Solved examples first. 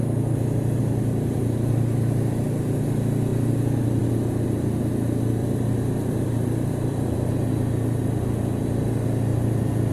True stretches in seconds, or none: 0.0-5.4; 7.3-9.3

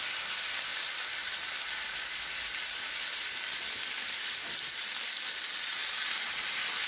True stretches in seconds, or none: 5.8-6.3

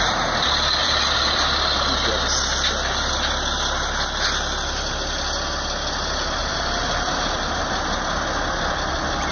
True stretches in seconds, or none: 0.0-0.8; 3.1-6.4; 7.6-9.3

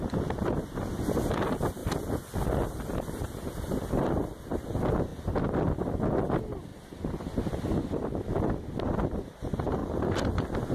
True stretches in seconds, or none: 0.0-9.8